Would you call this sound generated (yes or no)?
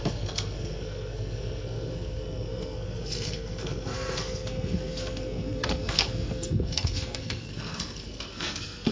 yes